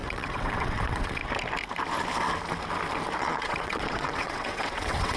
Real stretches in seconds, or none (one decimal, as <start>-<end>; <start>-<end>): 1.2-3.2